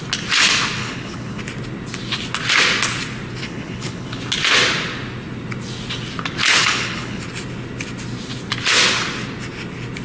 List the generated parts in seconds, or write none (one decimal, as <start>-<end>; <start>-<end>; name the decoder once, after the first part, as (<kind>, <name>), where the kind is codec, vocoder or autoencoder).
0.8-1.4 (codec, HILCodec); 3.4-4.2; 6.6-7.2